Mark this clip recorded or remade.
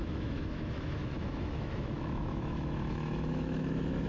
remade